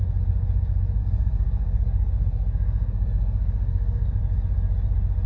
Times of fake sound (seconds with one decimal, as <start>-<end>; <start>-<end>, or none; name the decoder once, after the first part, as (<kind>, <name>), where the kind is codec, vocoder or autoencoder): 1.0-4.2 (codec, SNAC)